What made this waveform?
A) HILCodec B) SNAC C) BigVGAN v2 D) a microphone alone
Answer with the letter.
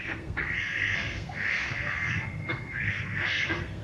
B